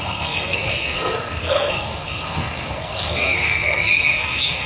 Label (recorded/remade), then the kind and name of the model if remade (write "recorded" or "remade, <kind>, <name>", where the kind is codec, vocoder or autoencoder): remade, codec, SNAC